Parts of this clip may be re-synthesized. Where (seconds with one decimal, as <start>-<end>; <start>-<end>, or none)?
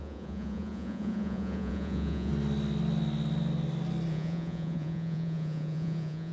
0.0-2.3; 4.1-6.3